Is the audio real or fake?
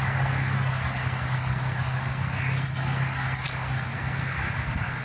fake